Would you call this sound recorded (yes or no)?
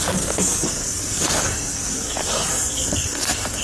no